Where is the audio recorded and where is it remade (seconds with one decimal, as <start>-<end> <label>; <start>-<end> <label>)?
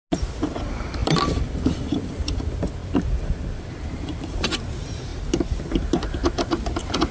0.0-1.0 recorded; 1.0-2.1 remade; 2.1-2.8 recorded; 2.8-4.6 remade; 4.6-7.1 recorded